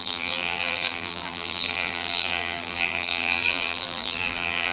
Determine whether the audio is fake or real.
fake